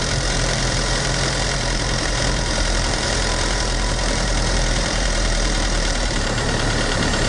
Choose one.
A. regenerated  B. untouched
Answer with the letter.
A